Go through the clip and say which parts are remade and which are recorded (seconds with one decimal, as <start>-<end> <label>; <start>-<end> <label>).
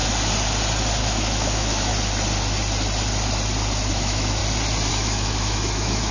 0.0-1.0 recorded; 1.0-1.9 remade; 1.9-3.9 recorded; 3.9-4.4 remade; 4.4-4.9 recorded; 4.9-6.1 remade